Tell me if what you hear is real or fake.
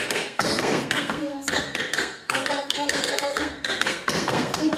fake